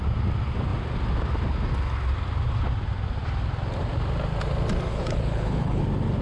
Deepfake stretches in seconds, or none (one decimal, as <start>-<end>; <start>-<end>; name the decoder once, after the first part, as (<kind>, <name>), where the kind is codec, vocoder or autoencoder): 4.9-5.8 (codec, HILCodec)